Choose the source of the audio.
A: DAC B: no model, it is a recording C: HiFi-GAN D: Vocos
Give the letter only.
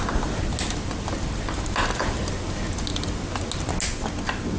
B